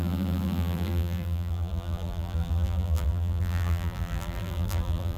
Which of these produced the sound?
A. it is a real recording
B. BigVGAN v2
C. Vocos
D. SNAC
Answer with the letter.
B